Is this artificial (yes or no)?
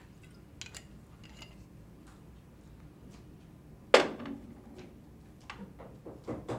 no